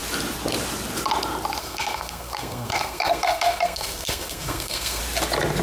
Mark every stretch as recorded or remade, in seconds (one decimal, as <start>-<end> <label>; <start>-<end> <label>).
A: 0.0-1.6 recorded; 1.6-5.0 remade; 5.0-5.6 recorded